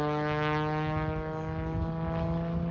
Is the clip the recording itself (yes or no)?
yes